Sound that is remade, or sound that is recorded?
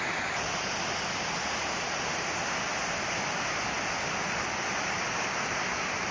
recorded